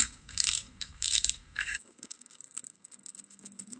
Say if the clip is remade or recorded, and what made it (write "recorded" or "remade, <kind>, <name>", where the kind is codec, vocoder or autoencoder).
remade, codec, SNAC